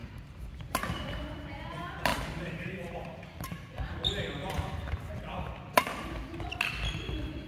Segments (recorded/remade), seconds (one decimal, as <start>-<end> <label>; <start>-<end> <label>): 0.0-0.6 remade; 0.6-2.1 recorded; 2.1-3.8 remade; 3.8-7.5 recorded

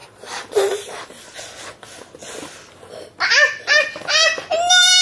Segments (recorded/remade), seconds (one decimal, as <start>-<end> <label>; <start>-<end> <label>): 0.0-1.0 remade; 1.0-5.0 recorded

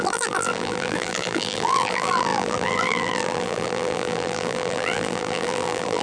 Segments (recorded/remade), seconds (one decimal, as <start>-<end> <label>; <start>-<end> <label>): 0.0-6.0 remade

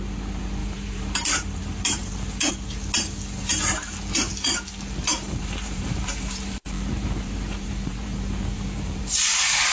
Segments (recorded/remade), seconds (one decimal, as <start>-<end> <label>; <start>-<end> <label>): 0.0-0.6 recorded; 0.6-2.5 remade; 2.5-5.1 recorded; 5.1-9.0 remade; 9.0-9.7 recorded

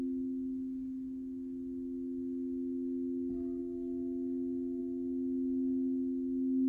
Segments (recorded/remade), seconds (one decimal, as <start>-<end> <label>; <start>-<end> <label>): 0.0-6.7 recorded

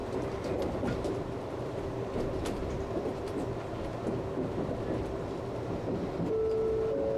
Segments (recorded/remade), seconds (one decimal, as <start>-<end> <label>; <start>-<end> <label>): 0.0-3.6 remade; 3.6-7.2 recorded